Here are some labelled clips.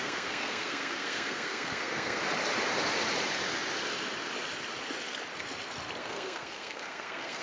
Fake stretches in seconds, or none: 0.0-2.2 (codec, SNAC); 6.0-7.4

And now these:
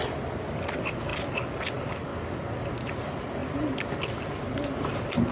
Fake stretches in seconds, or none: none

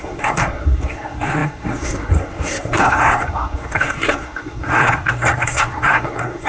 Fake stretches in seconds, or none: 0.0-6.5 (codec, SNAC)

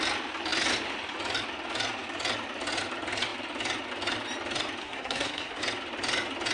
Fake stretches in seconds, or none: 4.8-5.6 (codec, SNAC)